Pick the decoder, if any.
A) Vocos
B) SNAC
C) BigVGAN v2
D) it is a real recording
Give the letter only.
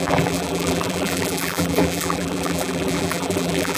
C